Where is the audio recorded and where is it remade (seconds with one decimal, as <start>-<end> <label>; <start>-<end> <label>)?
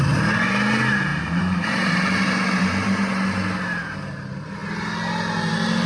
0.0-1.1 recorded; 1.1-3.1 remade; 3.1-5.9 recorded